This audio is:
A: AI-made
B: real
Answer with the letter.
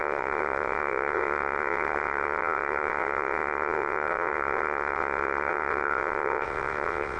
A